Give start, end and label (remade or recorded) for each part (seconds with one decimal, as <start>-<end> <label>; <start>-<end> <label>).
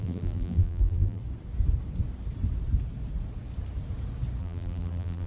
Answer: 0.0-1.2 remade; 1.2-4.4 recorded; 4.4-5.3 remade